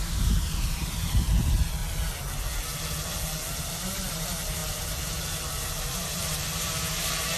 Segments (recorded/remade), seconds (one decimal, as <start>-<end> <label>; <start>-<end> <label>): 0.0-1.8 remade; 1.8-3.7 recorded; 3.7-7.4 remade